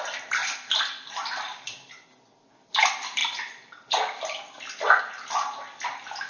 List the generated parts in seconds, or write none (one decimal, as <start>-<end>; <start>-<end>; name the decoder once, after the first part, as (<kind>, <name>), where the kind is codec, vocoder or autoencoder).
none